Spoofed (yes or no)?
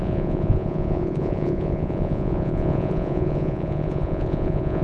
yes